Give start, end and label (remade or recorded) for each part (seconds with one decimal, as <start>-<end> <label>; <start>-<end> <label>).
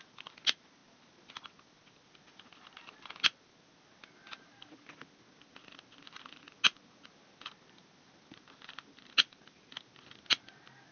0.0-10.9 recorded